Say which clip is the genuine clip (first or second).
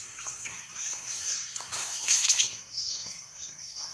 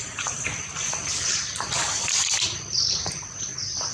second